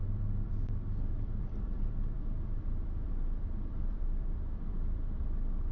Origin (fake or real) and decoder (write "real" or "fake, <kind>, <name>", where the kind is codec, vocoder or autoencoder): fake, vocoder, BigVGAN v2